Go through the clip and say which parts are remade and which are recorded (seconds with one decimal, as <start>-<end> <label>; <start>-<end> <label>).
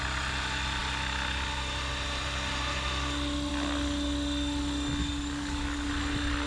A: 0.0-5.0 recorded; 5.0-5.9 remade; 5.9-6.5 recorded